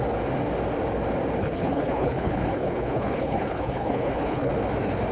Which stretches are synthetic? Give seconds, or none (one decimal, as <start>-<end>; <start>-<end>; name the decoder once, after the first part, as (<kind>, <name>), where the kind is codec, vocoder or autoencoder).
1.4-4.5 (codec, HILCodec)